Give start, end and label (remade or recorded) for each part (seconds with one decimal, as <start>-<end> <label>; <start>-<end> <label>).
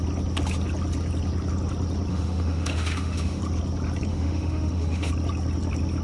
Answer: 0.0-2.1 recorded; 2.1-3.4 remade; 3.4-4.1 recorded; 4.1-5.1 remade; 5.1-6.0 recorded